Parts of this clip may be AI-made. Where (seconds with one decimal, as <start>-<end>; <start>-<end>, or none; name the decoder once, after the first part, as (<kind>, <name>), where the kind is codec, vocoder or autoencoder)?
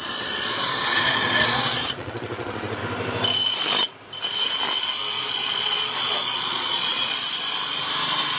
0.0-2.8 (vocoder, Vocos); 5.1-7.5